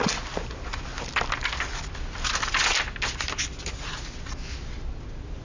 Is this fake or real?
real